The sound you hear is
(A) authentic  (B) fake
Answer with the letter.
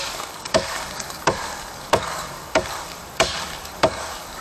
B